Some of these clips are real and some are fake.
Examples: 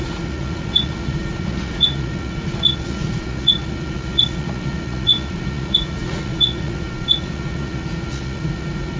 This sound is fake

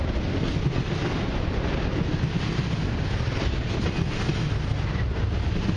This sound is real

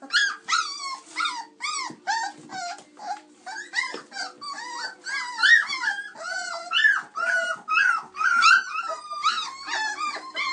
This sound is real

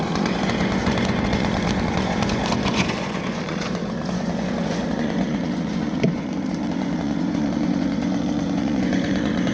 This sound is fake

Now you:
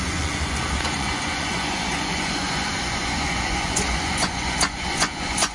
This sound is fake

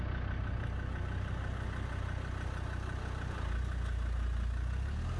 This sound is real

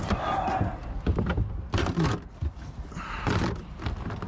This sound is real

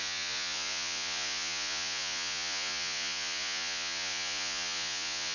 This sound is fake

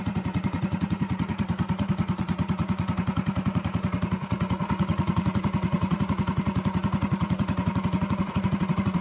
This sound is fake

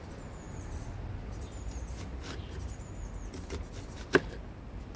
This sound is real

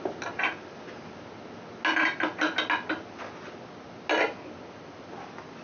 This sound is real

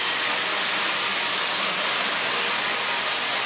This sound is real